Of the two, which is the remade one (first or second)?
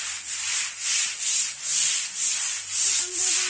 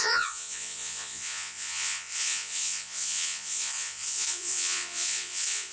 second